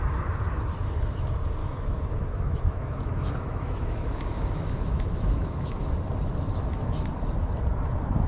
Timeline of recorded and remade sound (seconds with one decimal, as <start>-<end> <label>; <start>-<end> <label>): 0.0-1.6 recorded; 1.6-5.9 remade; 5.9-8.3 recorded